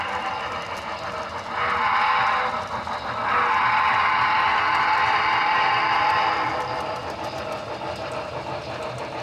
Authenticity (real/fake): real